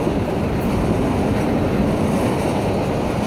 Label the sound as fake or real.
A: real